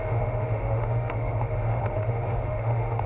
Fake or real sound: fake